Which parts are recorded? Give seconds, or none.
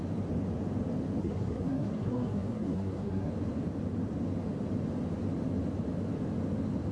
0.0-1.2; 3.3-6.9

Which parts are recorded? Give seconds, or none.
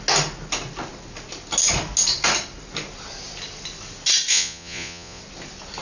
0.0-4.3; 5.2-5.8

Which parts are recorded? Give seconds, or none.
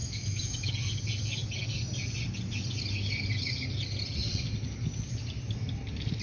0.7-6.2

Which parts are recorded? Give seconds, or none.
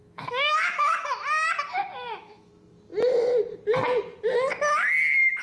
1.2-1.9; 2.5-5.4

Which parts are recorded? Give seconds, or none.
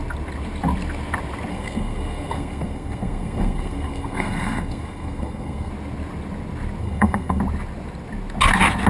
0.0-1.5; 5.7-6.8; 7.4-8.9